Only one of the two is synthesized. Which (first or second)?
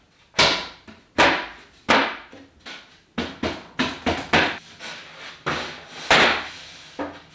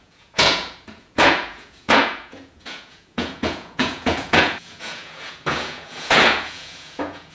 second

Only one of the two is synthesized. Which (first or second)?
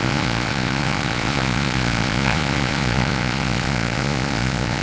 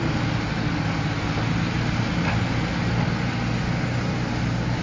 first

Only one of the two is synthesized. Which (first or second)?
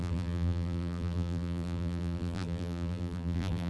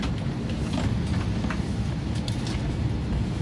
first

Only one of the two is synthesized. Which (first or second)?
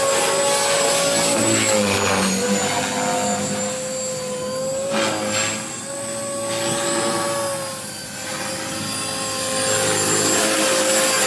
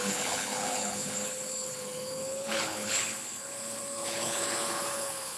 second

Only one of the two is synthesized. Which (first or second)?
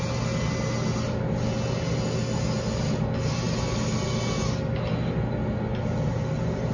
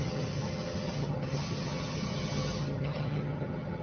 second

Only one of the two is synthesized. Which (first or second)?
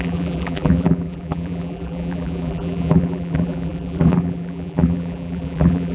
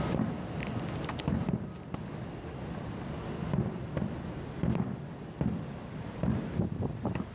first